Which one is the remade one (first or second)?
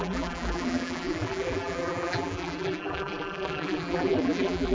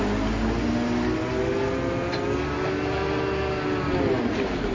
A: first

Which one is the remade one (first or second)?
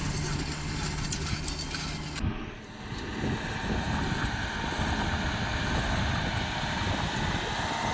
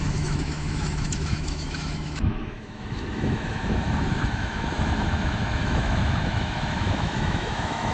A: second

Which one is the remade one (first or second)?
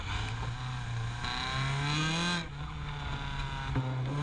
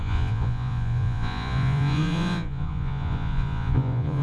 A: second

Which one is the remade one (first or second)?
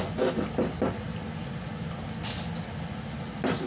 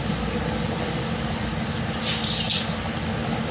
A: second